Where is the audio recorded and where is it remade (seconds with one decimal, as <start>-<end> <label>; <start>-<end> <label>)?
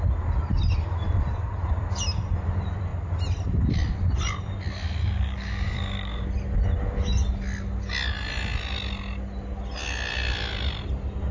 0.0-5.0 recorded; 5.0-6.3 remade; 6.3-11.3 recorded